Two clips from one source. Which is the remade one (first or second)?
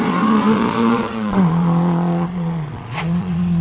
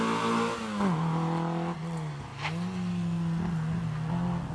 first